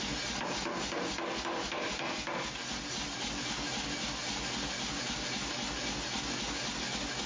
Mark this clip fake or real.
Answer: real